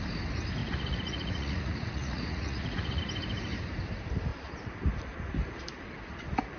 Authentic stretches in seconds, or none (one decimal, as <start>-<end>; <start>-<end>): 0.0-0.6; 3.0-6.6